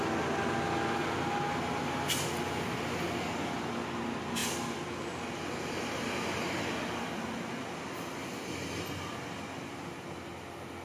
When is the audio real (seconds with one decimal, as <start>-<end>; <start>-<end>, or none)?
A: 0.0-4.4; 5.8-10.8